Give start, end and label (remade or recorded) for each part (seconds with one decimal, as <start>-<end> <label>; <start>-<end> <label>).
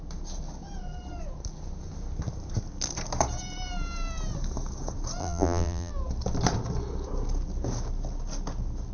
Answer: 0.0-5.2 recorded; 5.2-5.9 remade; 5.9-8.9 recorded